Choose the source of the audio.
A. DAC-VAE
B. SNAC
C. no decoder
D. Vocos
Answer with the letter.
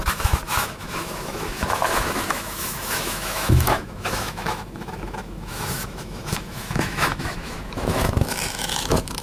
A